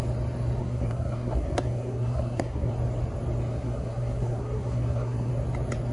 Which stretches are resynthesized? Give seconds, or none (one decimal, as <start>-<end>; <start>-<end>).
0.6-2.7; 3.5-5.3